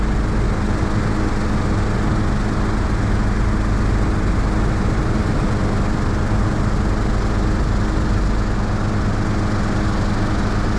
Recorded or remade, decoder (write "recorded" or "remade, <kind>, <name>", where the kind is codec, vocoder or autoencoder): recorded